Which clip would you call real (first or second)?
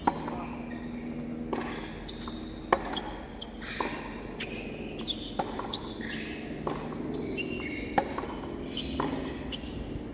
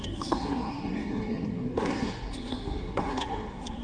first